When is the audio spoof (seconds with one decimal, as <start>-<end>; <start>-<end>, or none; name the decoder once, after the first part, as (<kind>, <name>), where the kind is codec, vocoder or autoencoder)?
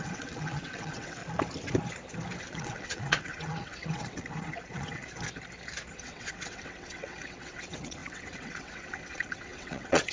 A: 0.0-1.2 (vocoder, WaveNeXt); 2.4-5.0; 5.9-10.1